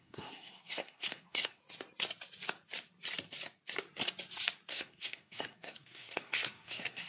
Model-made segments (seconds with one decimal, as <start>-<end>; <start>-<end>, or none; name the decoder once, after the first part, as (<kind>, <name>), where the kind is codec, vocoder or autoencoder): 0.0-1.6 (codec, SNAC); 4.7-7.1